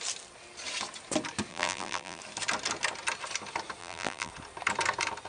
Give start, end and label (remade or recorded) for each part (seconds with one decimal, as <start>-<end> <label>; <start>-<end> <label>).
0.0-1.5 recorded; 1.5-2.2 remade; 2.2-3.8 recorded; 3.8-4.3 remade; 4.3-5.3 recorded